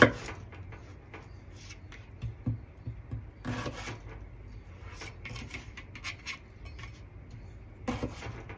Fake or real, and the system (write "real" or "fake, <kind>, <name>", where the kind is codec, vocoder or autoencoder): real